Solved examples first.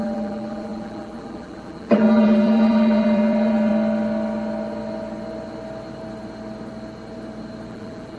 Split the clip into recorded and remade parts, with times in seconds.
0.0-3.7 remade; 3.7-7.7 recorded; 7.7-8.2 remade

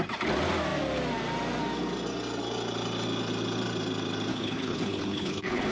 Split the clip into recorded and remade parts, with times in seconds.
0.0-4.3 recorded; 4.3-5.7 remade

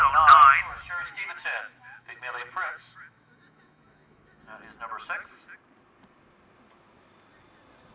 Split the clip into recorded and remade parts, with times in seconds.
0.0-0.5 recorded; 0.5-4.6 remade; 4.6-7.9 recorded

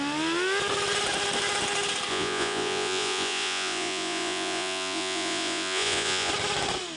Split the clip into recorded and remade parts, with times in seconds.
0.0-2.1 recorded; 2.1-6.3 remade; 6.3-7.0 recorded